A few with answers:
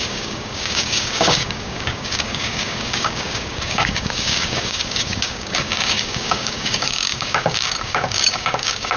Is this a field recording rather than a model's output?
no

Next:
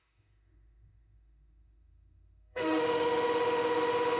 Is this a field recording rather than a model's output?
no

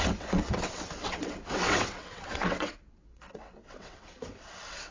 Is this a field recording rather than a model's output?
no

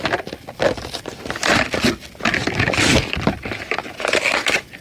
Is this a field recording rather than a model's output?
yes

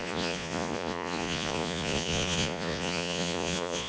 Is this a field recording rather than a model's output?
no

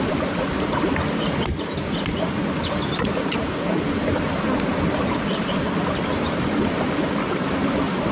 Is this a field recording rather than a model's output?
yes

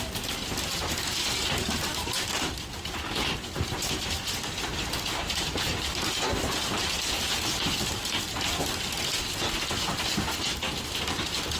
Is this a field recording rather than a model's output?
yes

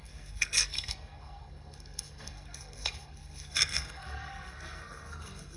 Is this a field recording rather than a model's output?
no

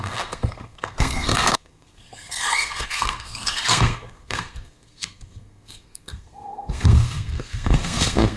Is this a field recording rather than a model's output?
no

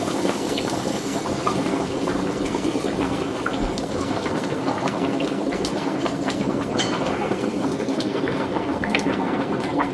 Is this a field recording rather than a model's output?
no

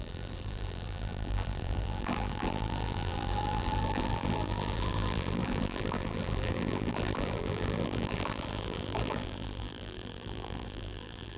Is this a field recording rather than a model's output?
no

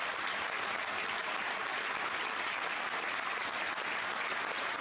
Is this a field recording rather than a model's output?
yes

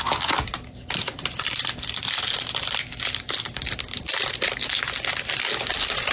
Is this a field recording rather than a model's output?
yes